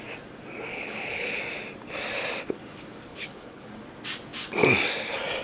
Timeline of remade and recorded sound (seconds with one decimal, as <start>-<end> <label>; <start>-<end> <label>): 0.0-0.7 recorded; 0.7-1.4 remade; 1.4-3.1 recorded; 3.1-3.7 remade; 3.7-5.4 recorded